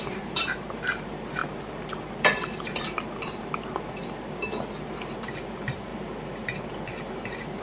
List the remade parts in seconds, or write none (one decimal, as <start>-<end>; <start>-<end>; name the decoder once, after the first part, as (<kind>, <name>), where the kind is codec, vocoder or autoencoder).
0.0-5.9 (vocoder, BigVGAN v2); 7.1-7.6